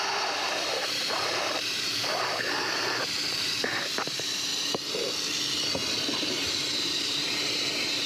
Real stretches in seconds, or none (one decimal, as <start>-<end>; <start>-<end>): 4.5-6.2